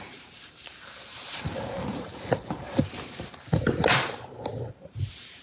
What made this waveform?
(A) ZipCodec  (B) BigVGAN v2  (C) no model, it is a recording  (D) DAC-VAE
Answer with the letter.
B